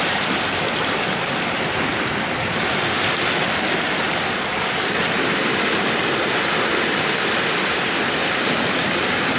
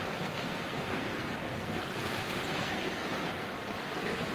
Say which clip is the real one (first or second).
first